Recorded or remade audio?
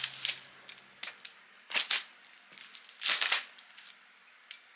recorded